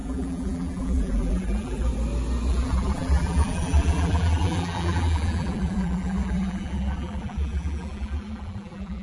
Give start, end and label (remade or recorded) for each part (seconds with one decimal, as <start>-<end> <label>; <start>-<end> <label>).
0.0-1.9 remade; 1.9-2.5 recorded; 2.5-9.0 remade